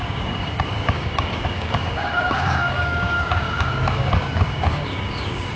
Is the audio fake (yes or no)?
yes